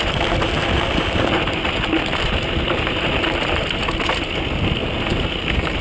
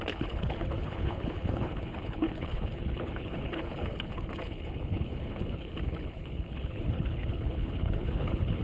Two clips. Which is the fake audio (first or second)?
second